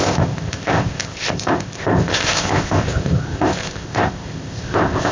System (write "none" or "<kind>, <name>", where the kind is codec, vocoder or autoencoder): codec, ZipCodec